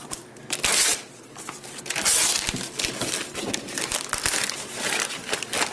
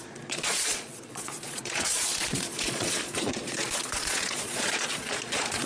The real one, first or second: first